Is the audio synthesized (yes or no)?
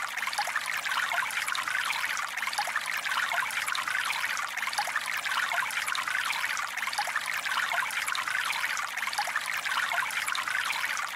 no